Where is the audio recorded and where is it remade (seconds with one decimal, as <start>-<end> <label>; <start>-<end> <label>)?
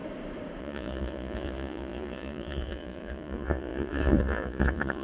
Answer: 0.0-0.6 recorded; 0.6-5.0 remade